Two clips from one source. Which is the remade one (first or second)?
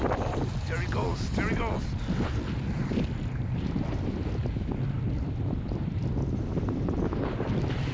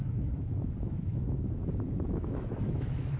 second